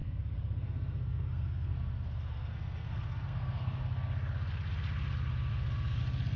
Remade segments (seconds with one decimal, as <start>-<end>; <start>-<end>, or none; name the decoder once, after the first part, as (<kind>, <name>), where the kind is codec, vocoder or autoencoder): 0.0-3.8 (codec, SNAC); 5.5-6.0